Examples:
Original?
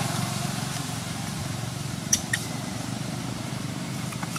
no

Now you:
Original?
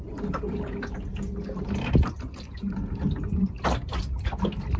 yes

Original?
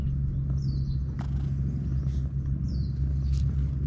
yes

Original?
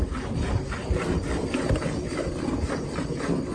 yes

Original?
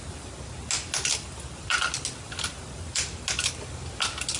yes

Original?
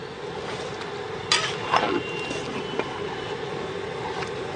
yes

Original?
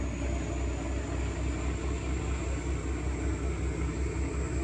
yes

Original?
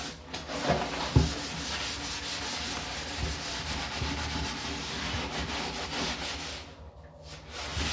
yes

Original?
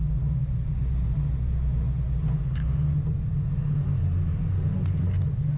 yes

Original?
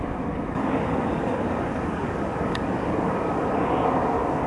no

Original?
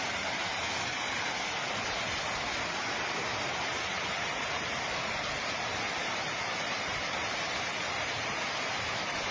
yes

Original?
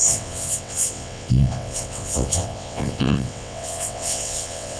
no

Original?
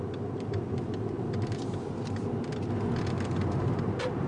yes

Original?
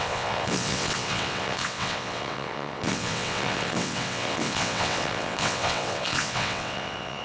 no